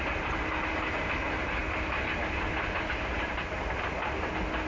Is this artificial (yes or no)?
no